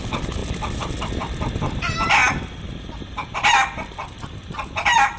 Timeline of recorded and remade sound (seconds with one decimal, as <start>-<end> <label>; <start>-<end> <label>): 0.0-2.2 remade; 2.2-4.1 recorded; 4.1-5.2 remade